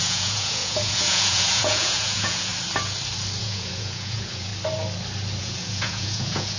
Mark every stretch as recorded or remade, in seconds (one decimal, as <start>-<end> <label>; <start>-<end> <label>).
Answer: 0.0-2.5 remade; 2.5-3.4 recorded; 3.4-4.5 remade; 4.5-5.4 recorded; 5.4-6.6 remade